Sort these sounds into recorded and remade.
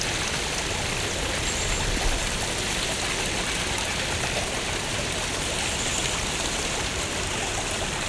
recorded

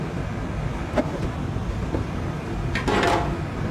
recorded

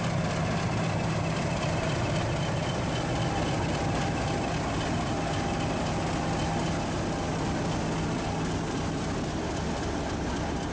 recorded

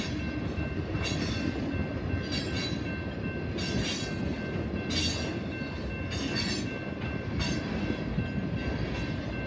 recorded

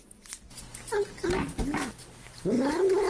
recorded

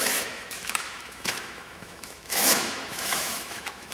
remade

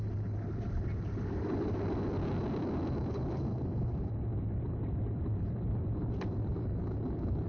recorded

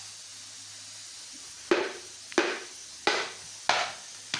recorded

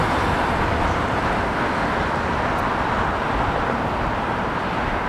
recorded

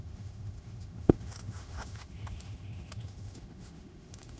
remade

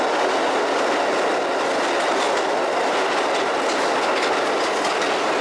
recorded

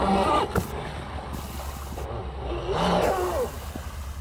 recorded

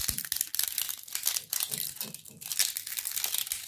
recorded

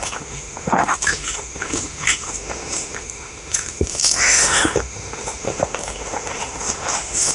remade